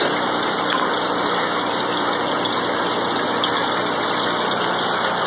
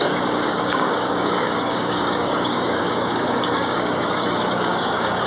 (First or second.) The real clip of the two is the first